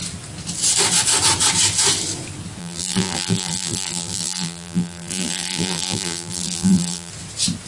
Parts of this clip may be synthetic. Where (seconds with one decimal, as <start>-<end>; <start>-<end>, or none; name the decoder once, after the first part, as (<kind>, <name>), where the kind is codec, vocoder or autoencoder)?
2.6-7.1 (vocoder, BigVGAN v2)